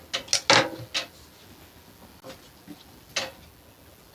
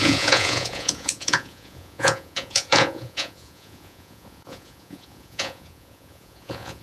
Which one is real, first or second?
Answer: first